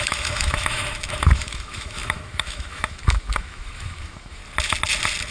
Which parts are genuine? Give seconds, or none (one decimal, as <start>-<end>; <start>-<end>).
4.4-5.3